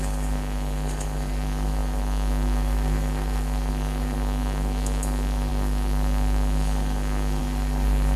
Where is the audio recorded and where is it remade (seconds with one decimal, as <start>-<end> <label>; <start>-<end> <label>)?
0.0-8.2 remade